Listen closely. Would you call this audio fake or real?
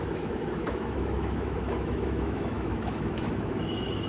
fake